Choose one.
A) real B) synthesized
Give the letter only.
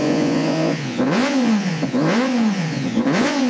B